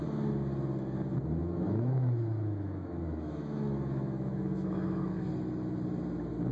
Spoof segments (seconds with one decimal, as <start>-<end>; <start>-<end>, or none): 1.4-5.3